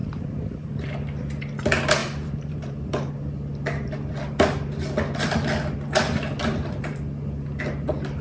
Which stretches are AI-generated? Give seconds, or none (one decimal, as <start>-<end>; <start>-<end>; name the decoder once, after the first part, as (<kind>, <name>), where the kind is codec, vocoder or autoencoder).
0.0-0.7 (vocoder, BigVGAN v2); 2.0-3.1; 6.4-7.0